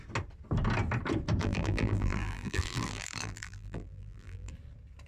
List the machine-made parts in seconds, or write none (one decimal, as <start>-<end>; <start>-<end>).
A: 1.4-4.5